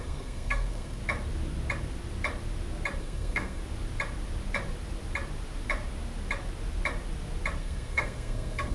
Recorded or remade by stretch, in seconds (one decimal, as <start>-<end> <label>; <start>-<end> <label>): 0.0-1.0 remade; 1.0-3.0 recorded; 3.0-3.6 remade; 3.6-7.6 recorded; 7.6-8.7 remade